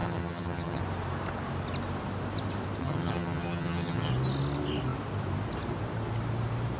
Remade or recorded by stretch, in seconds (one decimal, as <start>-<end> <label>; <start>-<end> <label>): 0.0-0.8 remade; 0.8-2.8 recorded; 2.8-4.1 remade; 4.1-6.8 recorded